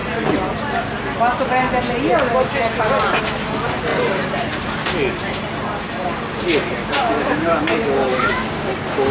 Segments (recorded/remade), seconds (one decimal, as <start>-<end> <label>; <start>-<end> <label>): 0.0-6.8 recorded; 6.8-7.5 remade; 7.5-8.1 recorded; 8.1-8.7 remade; 8.7-9.1 recorded